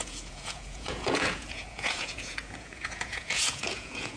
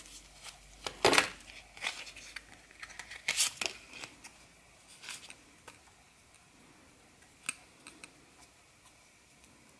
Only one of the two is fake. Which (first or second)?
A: first